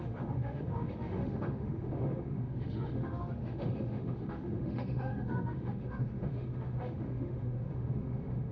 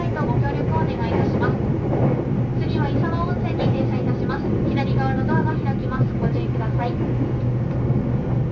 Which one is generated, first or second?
first